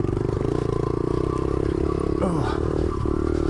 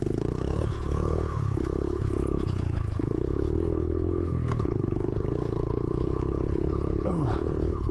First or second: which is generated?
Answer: second